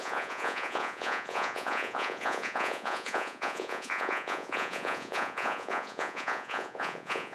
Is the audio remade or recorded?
remade